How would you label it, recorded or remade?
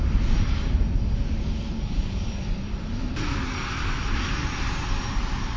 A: recorded